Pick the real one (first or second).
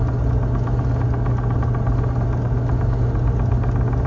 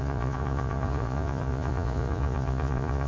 first